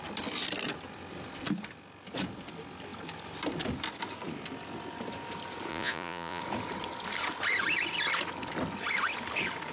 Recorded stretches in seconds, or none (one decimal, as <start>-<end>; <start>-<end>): 0.0-5.7; 6.4-9.7